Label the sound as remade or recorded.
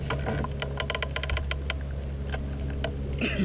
recorded